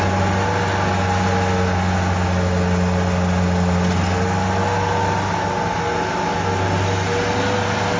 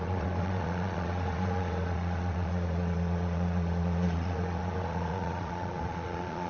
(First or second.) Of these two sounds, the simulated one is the second